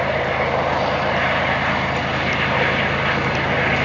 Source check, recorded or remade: recorded